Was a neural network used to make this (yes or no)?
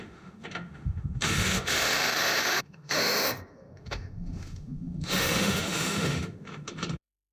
yes